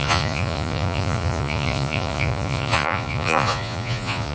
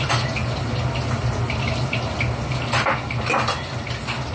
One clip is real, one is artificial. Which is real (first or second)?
second